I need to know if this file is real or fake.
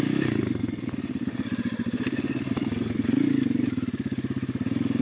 real